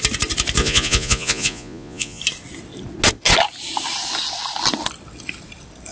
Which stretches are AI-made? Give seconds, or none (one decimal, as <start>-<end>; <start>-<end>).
0.6-2.2